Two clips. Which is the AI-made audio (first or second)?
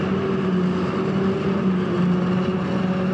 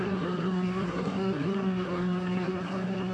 second